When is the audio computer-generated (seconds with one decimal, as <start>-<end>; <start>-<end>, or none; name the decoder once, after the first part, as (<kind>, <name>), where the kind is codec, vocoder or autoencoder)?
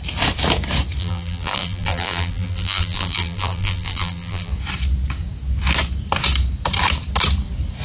1.0-4.5 (vocoder, BigVGAN v2)